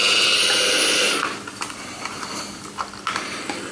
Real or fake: real